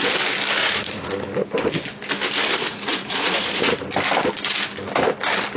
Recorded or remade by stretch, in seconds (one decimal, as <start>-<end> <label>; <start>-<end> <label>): 0.0-0.6 recorded; 0.6-1.1 remade; 1.1-2.5 recorded; 2.5-3.9 remade; 3.9-5.6 recorded